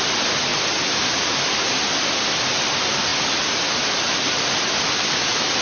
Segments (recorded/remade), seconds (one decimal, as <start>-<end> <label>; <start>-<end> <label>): 0.0-5.6 recorded